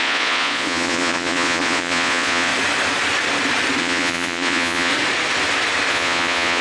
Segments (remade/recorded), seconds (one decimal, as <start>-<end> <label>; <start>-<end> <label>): 0.0-2.5 remade; 2.5-3.8 recorded; 3.8-4.9 remade; 4.9-5.9 recorded; 5.9-6.6 remade